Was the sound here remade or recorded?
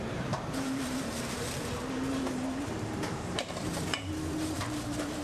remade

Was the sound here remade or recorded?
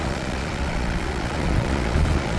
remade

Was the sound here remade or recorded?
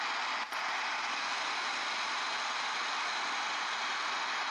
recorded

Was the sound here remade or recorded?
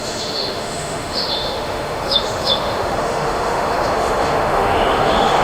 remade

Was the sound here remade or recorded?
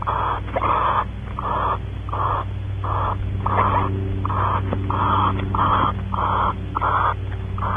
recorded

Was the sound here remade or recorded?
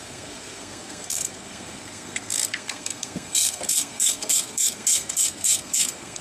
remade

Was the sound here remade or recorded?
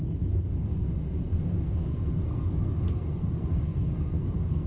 remade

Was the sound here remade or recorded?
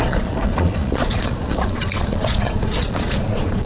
remade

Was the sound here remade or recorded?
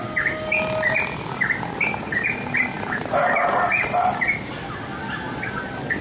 recorded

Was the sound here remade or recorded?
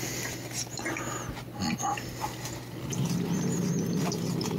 recorded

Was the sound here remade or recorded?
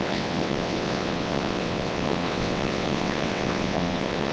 remade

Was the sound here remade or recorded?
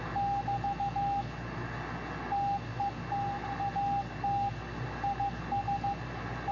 recorded